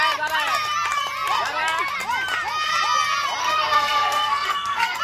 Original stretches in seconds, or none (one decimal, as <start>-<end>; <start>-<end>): 0.0-3.4